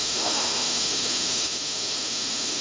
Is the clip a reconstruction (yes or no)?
yes